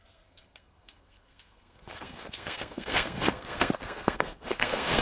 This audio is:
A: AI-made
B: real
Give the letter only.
A